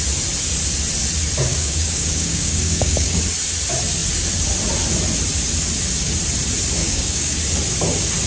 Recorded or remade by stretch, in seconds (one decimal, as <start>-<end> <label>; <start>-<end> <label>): 0.0-1.5 recorded; 1.5-3.2 remade; 3.2-6.8 recorded; 6.8-7.4 remade; 7.4-8.3 recorded